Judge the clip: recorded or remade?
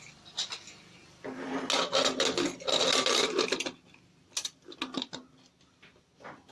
recorded